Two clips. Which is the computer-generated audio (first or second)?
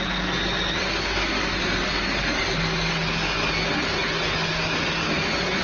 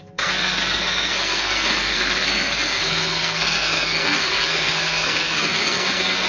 second